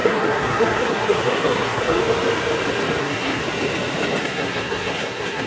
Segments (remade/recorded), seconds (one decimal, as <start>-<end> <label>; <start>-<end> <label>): 0.0-2.0 remade; 2.0-3.0 recorded; 3.0-3.4 remade; 3.4-4.2 recorded; 4.2-5.5 remade